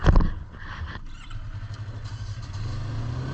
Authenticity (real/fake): real